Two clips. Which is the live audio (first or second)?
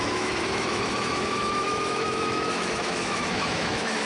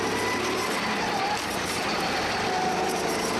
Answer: second